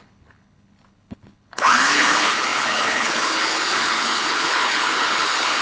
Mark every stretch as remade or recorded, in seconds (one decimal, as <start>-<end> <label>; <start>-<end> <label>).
0.0-5.6 remade